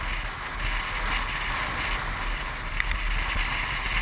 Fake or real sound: real